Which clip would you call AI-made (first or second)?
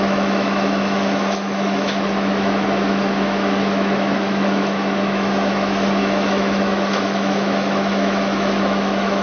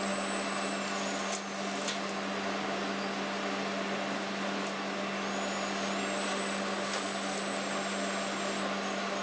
first